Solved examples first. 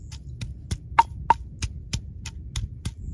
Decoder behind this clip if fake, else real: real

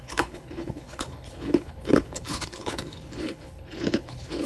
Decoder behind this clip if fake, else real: fake, codec, HILCodec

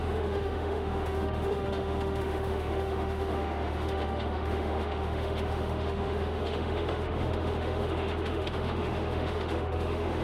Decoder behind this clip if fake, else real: fake, autoencoder, DAC-VAE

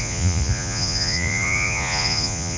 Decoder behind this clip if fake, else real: fake, vocoder, Vocos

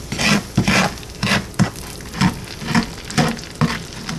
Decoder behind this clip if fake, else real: real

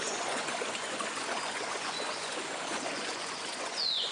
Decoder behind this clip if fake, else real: fake, vocoder, Vocos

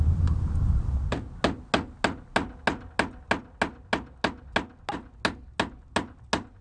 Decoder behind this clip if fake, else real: real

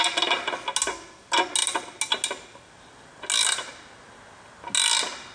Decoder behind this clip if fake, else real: real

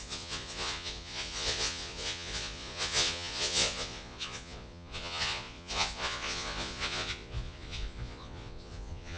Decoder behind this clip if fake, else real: fake, vocoder, Vocos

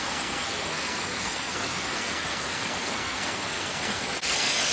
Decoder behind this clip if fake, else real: fake, codec, SNAC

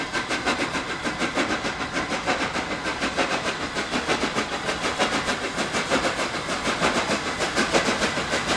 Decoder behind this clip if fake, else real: real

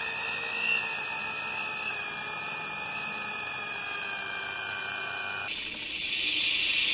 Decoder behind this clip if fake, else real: real